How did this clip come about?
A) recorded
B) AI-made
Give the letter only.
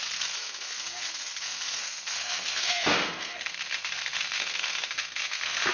B